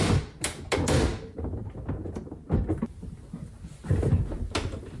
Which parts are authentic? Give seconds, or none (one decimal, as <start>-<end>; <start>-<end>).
0.0-5.0